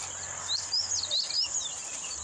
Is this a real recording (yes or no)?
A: yes